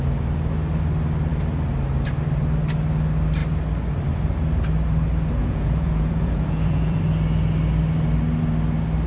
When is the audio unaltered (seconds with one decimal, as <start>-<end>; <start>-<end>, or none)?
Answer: 0.0-5.4; 7.0-9.1